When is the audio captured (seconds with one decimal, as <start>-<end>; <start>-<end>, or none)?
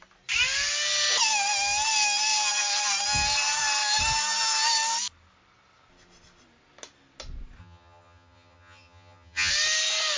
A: 0.0-7.6; 9.5-10.2